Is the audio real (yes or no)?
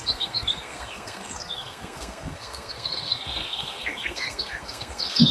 no